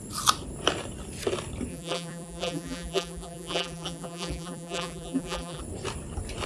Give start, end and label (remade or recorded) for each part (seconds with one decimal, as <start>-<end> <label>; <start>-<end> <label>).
0.0-1.7 recorded; 1.7-5.6 remade; 5.6-6.5 recorded